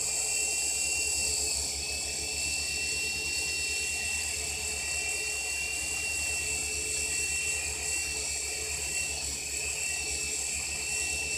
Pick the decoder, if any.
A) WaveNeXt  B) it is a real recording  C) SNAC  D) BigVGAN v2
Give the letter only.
B